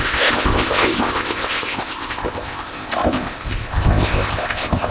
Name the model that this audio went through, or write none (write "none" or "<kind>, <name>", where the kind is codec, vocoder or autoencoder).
codec, ZipCodec